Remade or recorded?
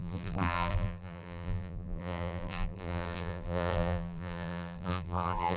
remade